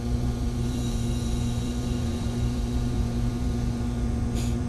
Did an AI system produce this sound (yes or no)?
yes